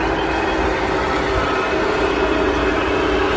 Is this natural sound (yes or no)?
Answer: yes